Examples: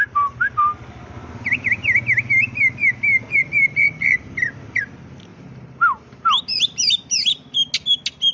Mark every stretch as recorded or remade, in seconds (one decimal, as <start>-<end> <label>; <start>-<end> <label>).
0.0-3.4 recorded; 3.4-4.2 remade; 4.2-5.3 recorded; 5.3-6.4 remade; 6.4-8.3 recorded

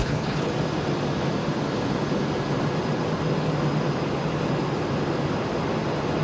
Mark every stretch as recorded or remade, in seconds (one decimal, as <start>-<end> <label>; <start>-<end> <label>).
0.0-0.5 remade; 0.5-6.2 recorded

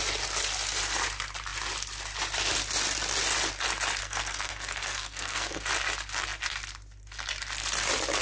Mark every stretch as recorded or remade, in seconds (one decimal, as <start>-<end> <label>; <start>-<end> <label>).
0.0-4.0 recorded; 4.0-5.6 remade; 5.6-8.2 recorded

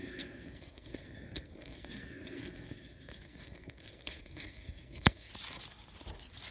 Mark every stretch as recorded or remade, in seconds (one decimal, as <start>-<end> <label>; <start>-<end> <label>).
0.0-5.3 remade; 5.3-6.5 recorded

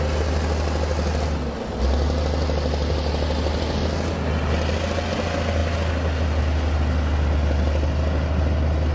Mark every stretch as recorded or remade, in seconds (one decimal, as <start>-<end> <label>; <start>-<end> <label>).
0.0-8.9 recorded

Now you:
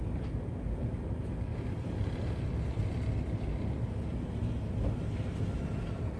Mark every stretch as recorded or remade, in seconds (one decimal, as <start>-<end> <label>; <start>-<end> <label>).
0.0-1.5 recorded; 1.5-3.6 remade; 3.6-6.2 recorded

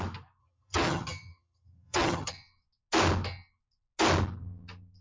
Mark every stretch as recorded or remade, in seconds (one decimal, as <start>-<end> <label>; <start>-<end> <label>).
0.0-0.4 recorded; 0.4-2.3 remade; 2.3-5.0 recorded

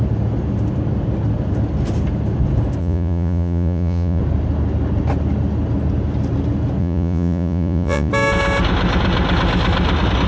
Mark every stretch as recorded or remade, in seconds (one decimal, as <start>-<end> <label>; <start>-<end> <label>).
0.0-2.8 recorded; 2.8-4.2 remade; 4.2-6.8 recorded; 6.8-8.1 remade; 8.1-10.3 recorded